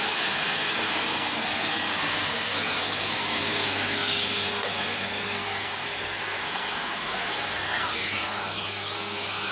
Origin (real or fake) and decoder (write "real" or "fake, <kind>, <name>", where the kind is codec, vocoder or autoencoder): fake, codec, SNAC